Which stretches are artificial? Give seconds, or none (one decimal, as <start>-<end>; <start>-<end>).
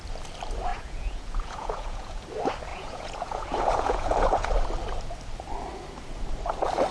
0.7-2.2; 2.7-4.5